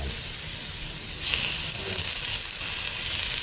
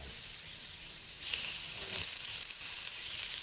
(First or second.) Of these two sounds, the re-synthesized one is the second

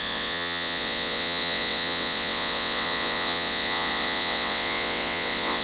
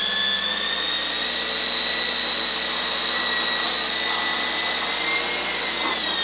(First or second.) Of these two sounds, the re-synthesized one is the first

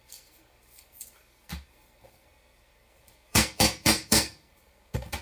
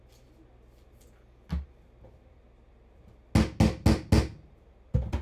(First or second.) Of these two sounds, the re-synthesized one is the first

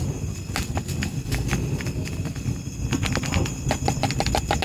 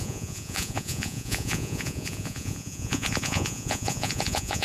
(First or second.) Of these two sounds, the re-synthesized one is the second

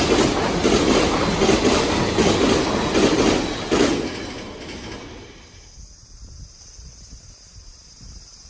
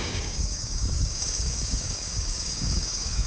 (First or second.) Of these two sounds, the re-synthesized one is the second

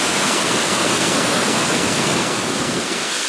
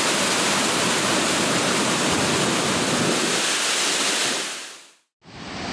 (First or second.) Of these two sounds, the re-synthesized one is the first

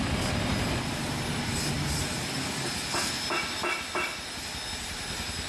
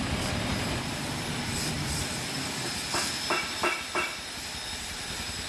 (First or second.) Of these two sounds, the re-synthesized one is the second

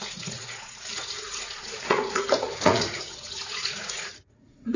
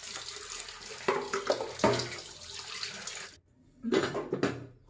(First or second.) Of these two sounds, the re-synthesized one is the first